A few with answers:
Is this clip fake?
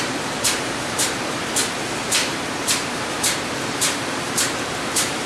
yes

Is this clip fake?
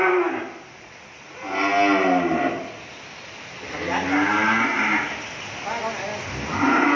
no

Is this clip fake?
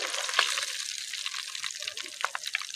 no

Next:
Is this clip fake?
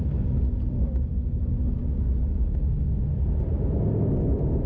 no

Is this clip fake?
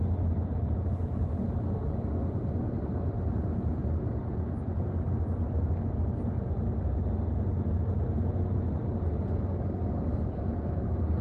no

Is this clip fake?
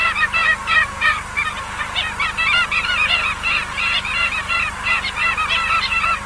yes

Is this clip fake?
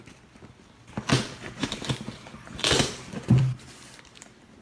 yes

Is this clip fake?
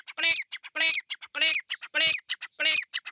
yes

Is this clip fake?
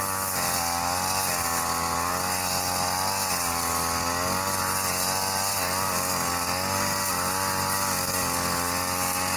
no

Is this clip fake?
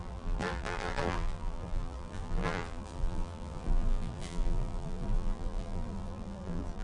yes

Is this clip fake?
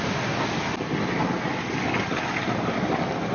no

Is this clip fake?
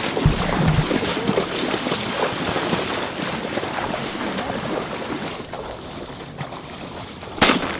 yes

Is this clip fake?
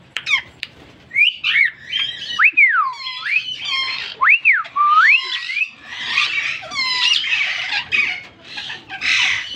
yes